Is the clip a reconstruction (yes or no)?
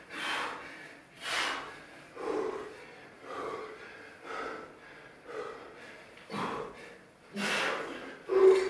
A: no